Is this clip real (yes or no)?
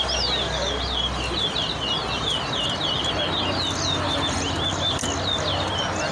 yes